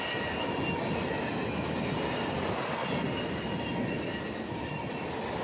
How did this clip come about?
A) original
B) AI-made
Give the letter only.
A